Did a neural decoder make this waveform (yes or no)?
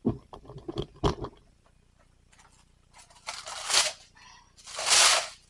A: no